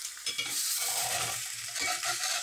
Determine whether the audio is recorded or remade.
remade